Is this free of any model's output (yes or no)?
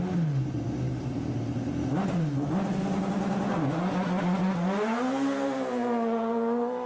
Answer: yes